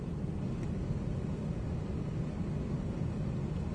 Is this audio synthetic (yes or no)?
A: no